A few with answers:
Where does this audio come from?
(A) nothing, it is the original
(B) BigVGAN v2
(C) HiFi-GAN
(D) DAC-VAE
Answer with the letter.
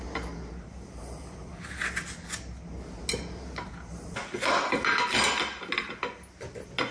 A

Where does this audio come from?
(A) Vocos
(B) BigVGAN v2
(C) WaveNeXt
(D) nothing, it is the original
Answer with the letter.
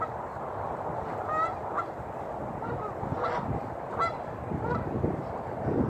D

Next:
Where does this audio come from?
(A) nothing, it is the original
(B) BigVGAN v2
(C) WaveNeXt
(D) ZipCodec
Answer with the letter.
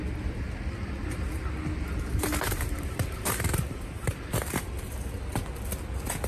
A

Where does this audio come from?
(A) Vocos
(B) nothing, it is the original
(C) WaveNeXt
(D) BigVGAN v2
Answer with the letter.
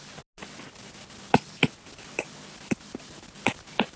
B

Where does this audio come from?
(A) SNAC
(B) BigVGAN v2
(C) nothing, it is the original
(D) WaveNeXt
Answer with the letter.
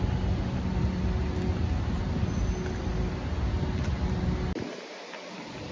C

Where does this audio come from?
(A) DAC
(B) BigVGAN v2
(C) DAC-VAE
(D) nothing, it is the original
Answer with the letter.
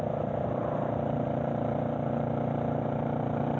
B